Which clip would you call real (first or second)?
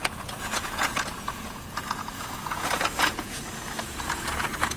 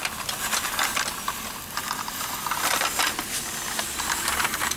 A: second